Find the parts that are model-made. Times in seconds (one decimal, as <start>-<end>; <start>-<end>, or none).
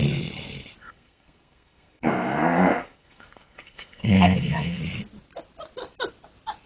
0.8-4.8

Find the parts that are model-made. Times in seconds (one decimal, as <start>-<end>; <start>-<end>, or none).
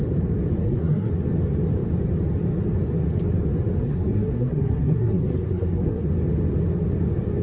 0.6-1.1; 3.8-6.1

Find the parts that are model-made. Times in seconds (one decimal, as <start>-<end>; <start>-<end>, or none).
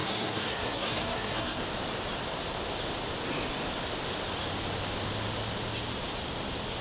0.0-1.6